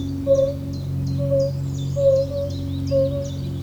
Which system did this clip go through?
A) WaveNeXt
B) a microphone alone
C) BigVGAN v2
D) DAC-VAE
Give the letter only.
B